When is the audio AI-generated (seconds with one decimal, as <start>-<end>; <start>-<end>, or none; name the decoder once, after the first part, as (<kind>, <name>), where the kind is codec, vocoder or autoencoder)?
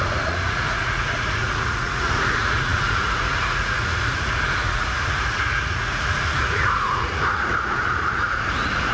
0.0-8.9 (vocoder, Vocos)